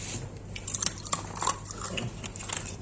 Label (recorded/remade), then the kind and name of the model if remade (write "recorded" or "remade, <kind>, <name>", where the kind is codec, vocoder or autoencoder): recorded